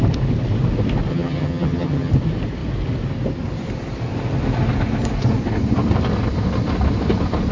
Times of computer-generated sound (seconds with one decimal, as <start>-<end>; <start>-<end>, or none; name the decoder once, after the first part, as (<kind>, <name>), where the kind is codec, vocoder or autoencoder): 1.1-2.1 (vocoder, HiFi-GAN)